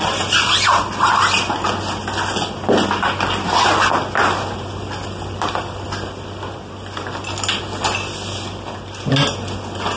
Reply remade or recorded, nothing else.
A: recorded